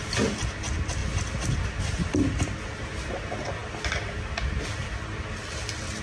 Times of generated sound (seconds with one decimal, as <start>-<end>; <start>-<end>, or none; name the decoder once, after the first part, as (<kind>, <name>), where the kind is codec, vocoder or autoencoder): none

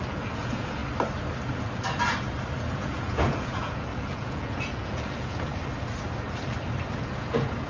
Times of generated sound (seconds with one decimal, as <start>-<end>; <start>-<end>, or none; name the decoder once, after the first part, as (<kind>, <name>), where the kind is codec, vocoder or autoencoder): 0.0-0.8 (vocoder, Vocos); 2.7-5.5; 7.2-7.7

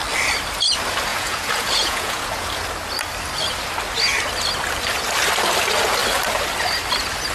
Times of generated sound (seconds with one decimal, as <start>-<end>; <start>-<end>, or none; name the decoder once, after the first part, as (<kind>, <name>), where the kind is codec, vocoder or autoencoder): 1.1-2.5 (vocoder, Vocos)